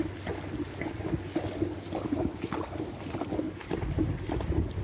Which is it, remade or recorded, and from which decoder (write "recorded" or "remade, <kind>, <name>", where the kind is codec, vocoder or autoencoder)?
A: recorded